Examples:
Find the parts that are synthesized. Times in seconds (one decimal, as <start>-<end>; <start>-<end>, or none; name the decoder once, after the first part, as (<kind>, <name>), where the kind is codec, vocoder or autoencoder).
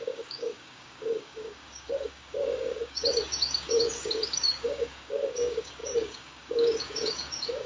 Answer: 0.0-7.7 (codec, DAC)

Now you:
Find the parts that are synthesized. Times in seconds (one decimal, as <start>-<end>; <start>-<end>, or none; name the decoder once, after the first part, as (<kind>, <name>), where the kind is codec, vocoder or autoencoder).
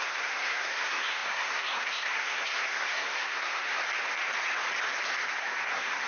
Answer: 0.0-3.8 (codec, SNAC); 5.3-6.1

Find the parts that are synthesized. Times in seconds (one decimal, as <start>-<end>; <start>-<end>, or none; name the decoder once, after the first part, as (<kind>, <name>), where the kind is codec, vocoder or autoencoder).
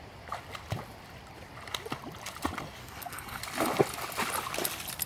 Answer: 2.8-3.4 (codec, SNAC)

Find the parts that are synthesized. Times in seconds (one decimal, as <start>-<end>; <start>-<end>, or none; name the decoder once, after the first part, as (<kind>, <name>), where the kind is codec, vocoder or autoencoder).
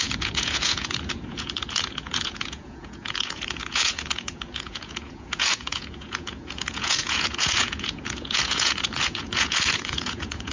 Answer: 0.0-10.5 (vocoder, Vocos)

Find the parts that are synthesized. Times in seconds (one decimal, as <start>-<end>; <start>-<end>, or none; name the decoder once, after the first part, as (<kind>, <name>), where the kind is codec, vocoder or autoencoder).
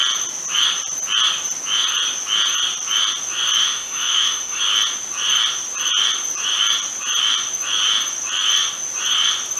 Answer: 3.6-4.6 (autoencoder, DAC-VAE)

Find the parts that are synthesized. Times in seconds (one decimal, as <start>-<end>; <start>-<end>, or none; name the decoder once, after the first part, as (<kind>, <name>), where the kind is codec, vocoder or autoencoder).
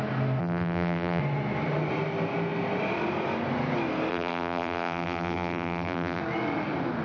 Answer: 0.4-1.2 (vocoder, BigVGAN v2); 4.1-6.2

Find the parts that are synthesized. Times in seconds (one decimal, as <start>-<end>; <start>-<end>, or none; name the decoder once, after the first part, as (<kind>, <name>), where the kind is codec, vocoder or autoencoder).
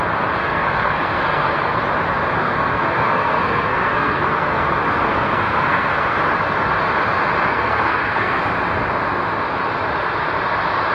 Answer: 0.4-1.8 (codec, SNAC); 2.4-6.2; 7.5-8.4